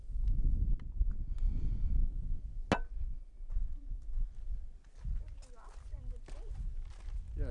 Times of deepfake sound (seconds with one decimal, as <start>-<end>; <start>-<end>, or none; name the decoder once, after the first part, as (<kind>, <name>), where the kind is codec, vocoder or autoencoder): none